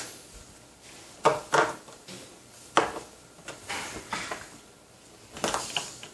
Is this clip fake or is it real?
real